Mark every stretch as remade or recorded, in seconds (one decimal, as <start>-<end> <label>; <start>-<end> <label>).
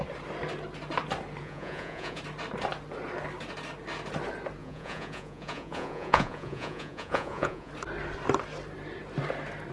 0.0-1.4 recorded; 1.4-2.2 remade; 2.2-4.6 recorded; 4.6-7.7 remade; 7.7-9.7 recorded